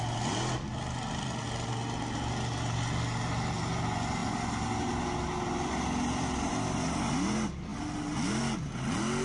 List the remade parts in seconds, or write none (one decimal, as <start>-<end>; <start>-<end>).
none